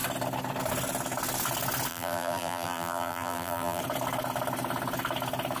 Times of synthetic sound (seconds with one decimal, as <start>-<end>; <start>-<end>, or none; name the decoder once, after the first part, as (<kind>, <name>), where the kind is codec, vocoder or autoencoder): 1.9-3.8 (vocoder, BigVGAN v2)